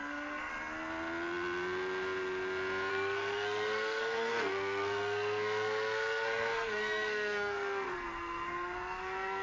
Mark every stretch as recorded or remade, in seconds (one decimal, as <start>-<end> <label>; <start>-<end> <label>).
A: 0.0-0.5 remade; 0.5-2.9 recorded; 2.9-9.4 remade